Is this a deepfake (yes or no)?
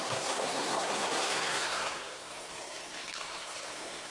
yes